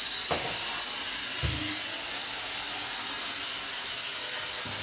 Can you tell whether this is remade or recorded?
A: recorded